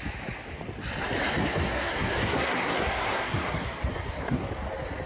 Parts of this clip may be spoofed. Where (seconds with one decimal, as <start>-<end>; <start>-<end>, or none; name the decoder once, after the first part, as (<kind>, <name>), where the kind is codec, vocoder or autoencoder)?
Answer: 1.4-4.5 (codec, SNAC)